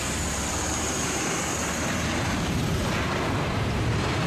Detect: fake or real fake